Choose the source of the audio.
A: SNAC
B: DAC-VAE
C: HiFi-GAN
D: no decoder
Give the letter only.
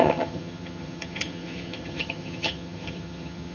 C